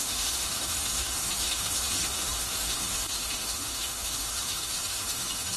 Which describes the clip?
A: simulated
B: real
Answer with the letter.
A